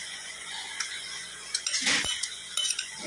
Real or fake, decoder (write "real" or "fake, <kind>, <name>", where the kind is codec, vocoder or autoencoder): fake, vocoder, Vocos